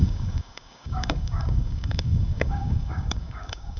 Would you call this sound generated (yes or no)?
yes